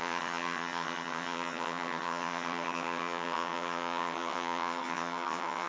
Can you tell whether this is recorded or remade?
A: remade